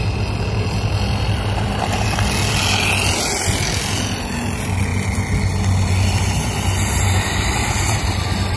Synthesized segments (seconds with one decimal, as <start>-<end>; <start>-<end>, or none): none